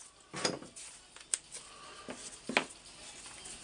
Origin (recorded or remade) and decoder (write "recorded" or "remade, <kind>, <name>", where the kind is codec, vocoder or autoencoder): recorded